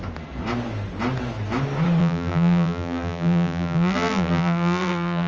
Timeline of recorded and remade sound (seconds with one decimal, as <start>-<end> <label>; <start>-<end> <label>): 0.0-2.0 recorded; 2.0-5.3 remade